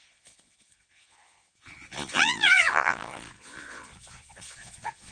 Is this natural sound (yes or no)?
no